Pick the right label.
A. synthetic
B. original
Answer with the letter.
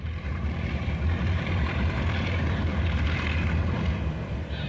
A